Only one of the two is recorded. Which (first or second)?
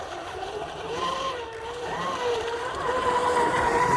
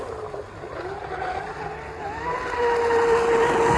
second